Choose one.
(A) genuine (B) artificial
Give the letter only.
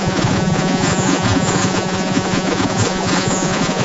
B